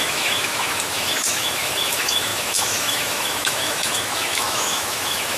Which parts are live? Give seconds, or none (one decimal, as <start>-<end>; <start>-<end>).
none